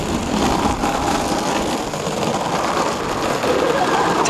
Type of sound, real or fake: real